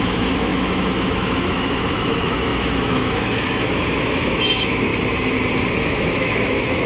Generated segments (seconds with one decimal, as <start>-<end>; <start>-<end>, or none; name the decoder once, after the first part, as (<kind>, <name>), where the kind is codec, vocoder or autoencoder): 0.0-4.9 (autoencoder, DAC-VAE); 5.8-6.9